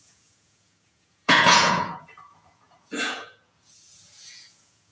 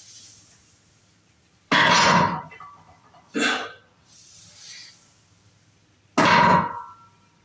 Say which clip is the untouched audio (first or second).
second